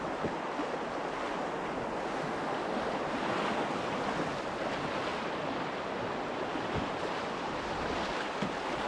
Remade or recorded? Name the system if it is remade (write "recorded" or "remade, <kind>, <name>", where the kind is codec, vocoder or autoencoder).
recorded